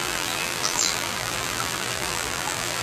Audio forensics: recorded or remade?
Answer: remade